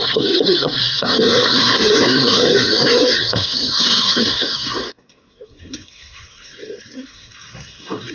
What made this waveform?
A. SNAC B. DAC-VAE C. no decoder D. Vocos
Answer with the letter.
A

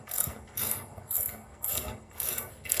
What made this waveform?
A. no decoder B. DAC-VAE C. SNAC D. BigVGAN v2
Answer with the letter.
C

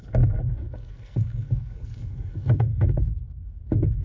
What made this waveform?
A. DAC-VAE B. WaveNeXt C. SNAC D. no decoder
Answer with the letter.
C